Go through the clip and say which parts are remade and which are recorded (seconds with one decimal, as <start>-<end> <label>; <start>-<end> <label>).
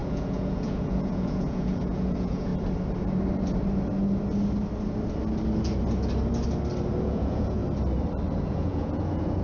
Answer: 0.0-2.5 remade; 2.5-7.0 recorded; 7.0-7.6 remade; 7.6-8.5 recorded; 8.5-9.4 remade